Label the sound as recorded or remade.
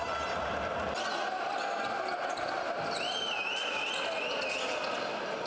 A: recorded